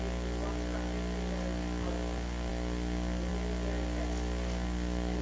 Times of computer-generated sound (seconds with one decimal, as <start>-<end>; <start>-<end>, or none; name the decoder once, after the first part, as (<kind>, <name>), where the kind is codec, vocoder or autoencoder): none